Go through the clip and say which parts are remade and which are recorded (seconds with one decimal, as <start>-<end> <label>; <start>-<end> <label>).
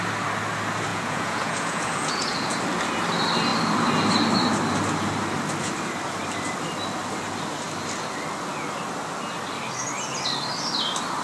0.0-0.9 recorded; 0.9-2.6 remade; 2.6-11.2 recorded